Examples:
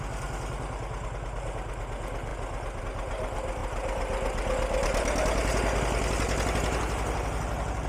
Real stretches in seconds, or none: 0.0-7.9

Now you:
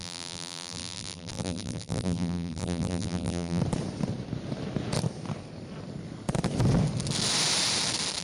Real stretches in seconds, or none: 3.6-8.2